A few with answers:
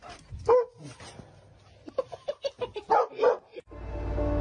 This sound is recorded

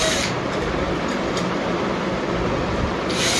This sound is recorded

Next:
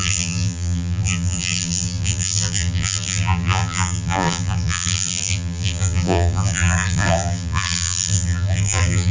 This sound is remade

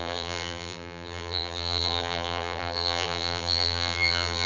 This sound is remade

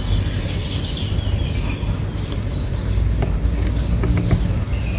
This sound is recorded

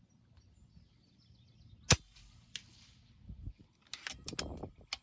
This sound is recorded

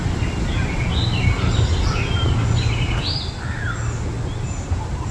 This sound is recorded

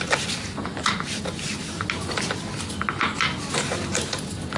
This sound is recorded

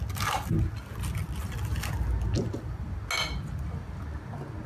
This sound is recorded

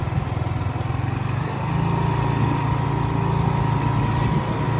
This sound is recorded